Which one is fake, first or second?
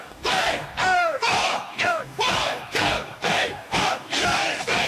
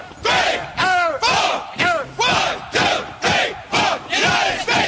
first